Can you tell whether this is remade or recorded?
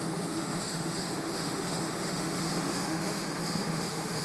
remade